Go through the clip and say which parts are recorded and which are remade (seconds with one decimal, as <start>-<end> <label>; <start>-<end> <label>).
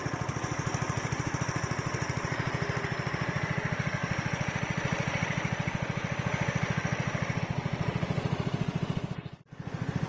0.0-10.1 recorded